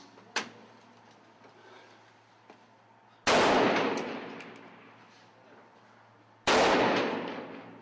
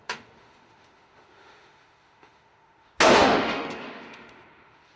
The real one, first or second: first